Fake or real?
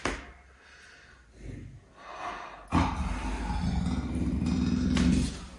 real